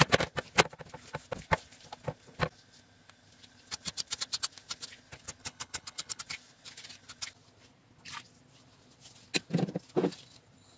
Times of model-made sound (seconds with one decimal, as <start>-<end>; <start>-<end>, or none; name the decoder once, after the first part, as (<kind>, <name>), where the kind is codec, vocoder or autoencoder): 5.4-6.2 (codec, HILCodec)

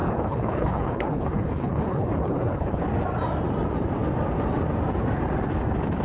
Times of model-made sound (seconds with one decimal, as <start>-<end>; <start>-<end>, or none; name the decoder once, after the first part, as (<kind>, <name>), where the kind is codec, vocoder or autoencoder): 0.0-2.8 (codec, HILCodec)

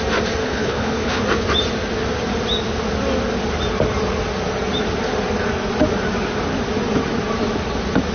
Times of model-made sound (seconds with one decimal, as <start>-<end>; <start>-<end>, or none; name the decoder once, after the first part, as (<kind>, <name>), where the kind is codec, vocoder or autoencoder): 0.4-1.2 (codec, HILCodec)

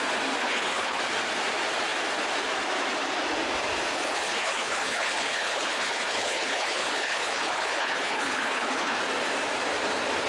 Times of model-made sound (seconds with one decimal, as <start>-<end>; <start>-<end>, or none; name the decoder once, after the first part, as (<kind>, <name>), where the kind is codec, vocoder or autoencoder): 0.4-1.0 (codec, HILCodec); 3.9-9.0

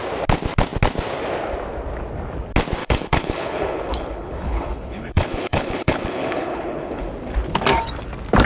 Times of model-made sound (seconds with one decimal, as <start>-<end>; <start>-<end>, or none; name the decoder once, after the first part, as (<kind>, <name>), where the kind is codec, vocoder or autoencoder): 2.8-7.1 (codec, HILCodec)

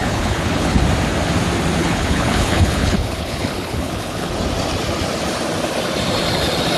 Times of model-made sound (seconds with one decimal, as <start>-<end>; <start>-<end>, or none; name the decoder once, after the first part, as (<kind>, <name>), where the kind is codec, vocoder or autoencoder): 0.0-0.8 (codec, HILCodec); 1.8-4.3